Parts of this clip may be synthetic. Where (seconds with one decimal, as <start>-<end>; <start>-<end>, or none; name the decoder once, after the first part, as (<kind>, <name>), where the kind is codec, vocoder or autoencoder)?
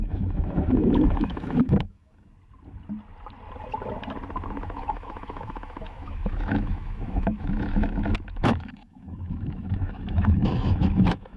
0.0-2.3 (autoencoder, DAC-VAE); 4.6-11.4